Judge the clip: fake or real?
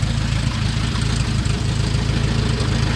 real